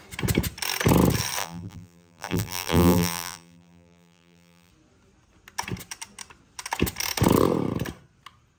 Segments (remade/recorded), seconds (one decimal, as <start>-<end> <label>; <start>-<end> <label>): 0.0-1.4 recorded; 1.4-4.7 remade; 4.7-8.6 recorded